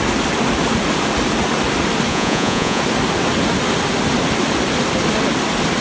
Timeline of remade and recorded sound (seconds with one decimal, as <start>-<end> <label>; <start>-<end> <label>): 0.0-2.1 recorded; 2.1-2.8 remade; 2.8-5.8 recorded